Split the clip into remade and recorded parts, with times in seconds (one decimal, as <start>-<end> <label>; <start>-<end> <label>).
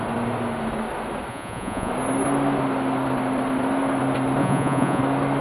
0.0-1.3 recorded; 1.3-1.9 remade; 1.9-4.4 recorded; 4.4-5.0 remade; 5.0-5.4 recorded